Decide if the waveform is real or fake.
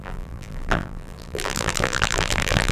fake